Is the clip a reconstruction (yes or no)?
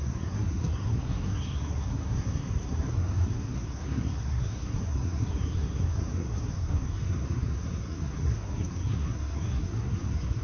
yes